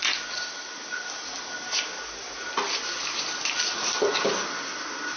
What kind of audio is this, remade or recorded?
recorded